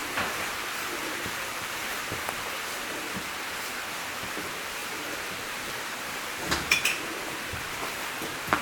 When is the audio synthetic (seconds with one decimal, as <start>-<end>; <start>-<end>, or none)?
0.0-2.2; 4.8-8.6